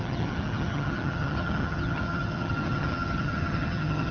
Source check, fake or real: fake